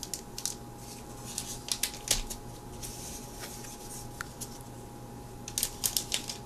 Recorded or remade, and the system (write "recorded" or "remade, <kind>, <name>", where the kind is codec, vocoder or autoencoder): recorded